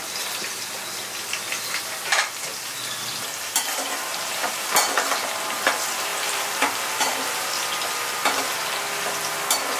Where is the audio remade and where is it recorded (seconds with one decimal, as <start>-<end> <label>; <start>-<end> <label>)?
0.0-6.1 recorded; 6.1-7.6 remade; 7.6-9.8 recorded